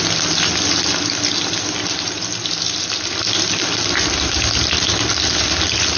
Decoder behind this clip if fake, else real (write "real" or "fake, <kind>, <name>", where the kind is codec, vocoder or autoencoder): real